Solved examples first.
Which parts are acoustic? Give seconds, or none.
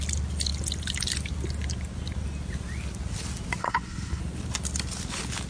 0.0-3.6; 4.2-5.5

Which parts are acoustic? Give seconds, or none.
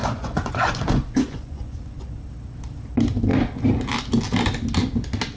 2.2-5.4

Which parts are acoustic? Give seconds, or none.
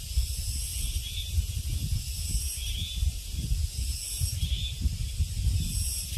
0.0-6.2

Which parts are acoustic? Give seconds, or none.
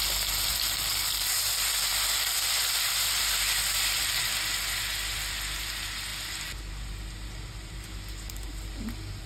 0.0-9.3